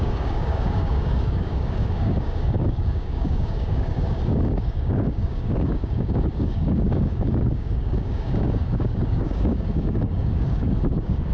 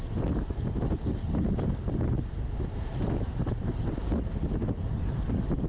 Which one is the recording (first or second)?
second